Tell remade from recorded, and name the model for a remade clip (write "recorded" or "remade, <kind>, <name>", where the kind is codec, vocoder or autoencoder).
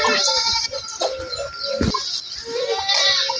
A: recorded